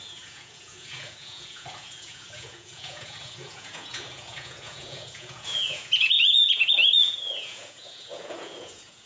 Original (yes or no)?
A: no